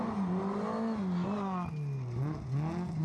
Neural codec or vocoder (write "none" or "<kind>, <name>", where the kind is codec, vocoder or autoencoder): none